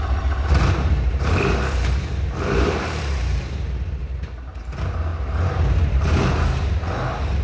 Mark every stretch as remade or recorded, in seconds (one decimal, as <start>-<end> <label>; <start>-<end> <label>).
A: 0.0-4.0 remade; 4.0-4.6 recorded; 4.6-5.1 remade; 5.1-5.9 recorded; 5.9-7.4 remade